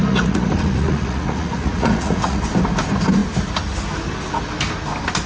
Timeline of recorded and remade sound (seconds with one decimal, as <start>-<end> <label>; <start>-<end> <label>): 0.0-2.4 remade; 2.4-5.3 recorded